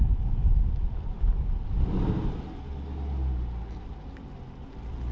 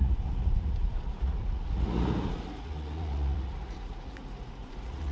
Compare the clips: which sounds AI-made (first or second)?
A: second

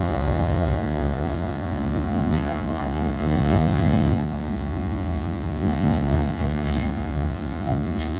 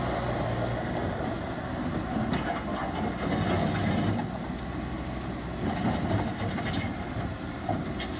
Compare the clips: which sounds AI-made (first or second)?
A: first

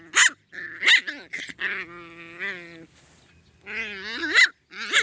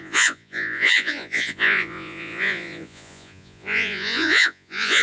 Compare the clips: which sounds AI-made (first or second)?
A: second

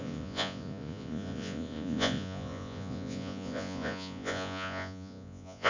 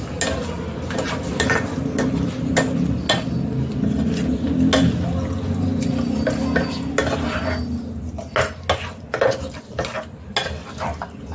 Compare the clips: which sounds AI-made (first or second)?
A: first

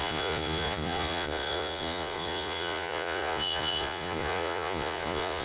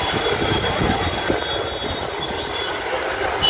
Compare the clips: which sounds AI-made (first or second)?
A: first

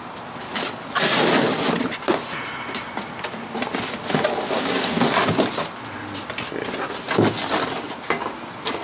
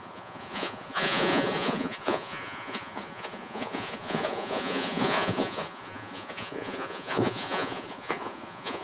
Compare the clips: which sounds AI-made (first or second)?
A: second